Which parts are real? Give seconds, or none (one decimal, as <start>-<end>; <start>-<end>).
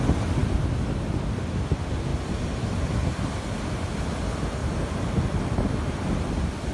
0.0-4.6; 5.4-6.7